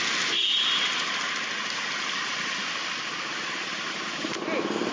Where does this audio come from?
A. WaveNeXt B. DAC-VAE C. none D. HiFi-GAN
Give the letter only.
C